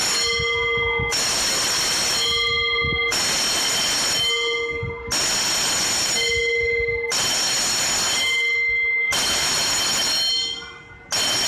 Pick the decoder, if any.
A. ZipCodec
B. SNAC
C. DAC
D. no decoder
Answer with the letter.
D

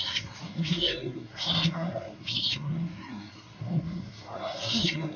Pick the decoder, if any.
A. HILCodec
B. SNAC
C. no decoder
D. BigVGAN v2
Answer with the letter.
B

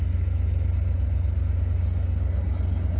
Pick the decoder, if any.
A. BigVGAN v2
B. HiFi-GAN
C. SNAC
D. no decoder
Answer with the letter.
D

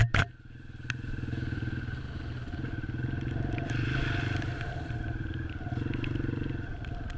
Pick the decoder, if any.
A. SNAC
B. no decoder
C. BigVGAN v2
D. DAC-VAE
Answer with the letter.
B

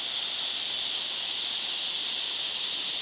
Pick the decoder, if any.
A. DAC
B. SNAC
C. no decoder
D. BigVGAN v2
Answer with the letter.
C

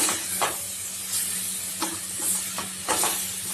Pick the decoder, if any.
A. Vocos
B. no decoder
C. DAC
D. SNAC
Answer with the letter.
B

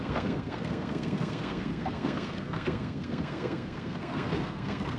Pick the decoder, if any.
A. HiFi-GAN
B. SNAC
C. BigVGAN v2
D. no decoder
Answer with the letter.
B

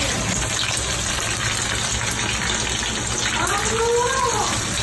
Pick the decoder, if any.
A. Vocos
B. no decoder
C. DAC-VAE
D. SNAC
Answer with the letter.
B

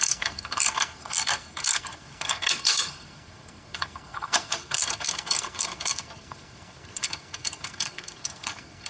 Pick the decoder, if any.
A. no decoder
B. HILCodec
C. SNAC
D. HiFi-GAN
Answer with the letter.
C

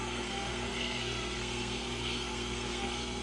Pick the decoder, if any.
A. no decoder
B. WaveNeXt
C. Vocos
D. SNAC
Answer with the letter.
D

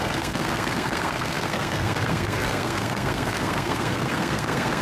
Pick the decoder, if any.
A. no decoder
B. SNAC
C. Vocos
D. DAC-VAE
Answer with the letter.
B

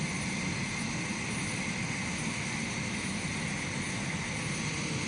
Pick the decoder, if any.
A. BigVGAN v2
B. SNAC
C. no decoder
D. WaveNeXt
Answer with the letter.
C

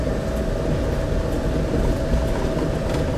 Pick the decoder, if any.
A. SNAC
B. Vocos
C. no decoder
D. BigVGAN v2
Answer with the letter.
C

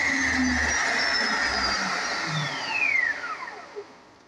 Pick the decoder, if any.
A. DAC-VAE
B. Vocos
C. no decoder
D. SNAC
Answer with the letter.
C